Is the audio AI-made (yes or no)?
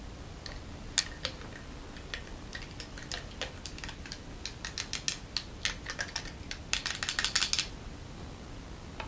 no